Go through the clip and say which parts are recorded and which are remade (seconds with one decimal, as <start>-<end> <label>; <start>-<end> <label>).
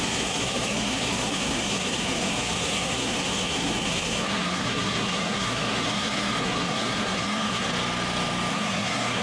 0.0-7.7 remade; 7.7-8.5 recorded; 8.5-9.2 remade